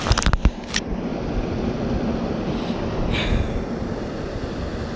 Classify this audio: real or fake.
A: real